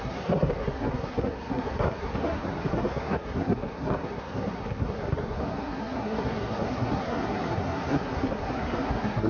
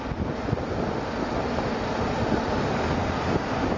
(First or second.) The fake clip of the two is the first